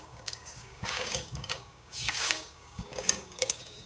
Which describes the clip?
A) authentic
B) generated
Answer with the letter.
B